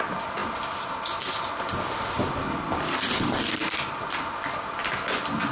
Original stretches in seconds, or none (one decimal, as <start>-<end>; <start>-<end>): 0.0-5.5